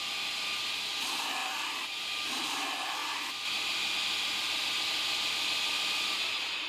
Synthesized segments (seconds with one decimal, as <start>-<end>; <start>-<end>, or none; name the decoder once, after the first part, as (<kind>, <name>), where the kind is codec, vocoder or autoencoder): none